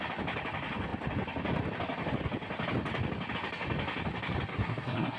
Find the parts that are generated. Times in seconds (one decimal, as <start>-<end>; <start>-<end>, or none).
4.5-5.2